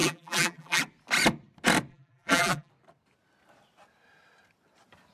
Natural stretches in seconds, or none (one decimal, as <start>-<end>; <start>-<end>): 0.8-1.9; 2.7-5.1